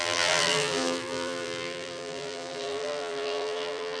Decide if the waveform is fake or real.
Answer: fake